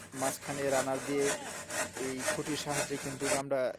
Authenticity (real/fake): real